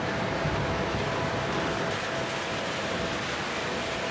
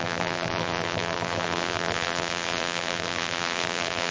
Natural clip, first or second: first